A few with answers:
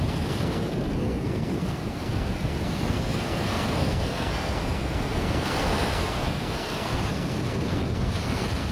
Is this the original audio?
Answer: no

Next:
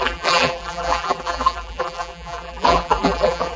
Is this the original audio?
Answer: no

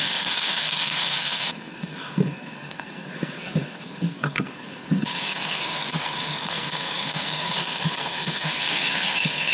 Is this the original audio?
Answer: no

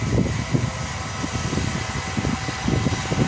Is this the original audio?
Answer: yes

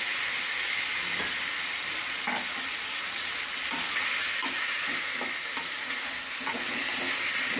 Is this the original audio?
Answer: yes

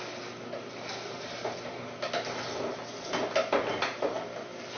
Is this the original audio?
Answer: yes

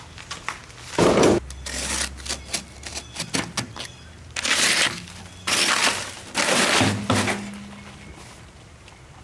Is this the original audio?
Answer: yes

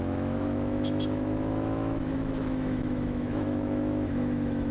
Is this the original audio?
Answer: no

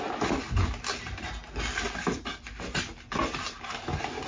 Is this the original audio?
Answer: yes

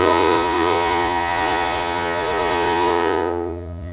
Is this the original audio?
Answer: no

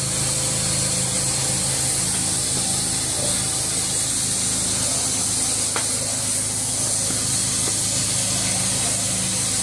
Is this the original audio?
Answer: yes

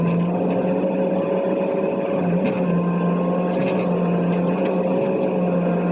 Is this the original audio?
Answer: yes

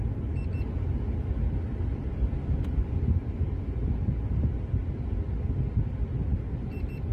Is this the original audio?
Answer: yes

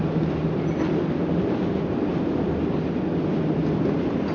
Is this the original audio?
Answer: yes